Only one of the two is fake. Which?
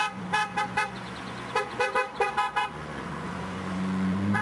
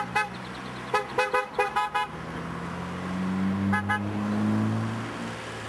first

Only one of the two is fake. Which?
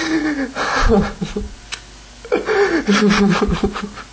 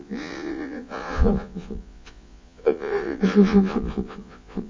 second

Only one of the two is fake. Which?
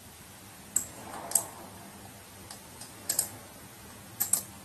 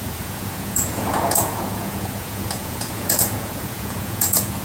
second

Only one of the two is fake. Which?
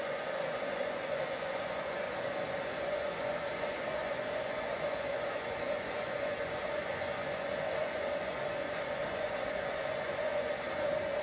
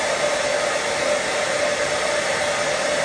first